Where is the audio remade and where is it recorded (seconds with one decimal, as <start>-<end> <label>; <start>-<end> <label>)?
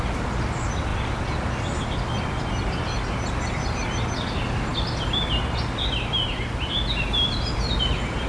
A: 0.0-8.3 recorded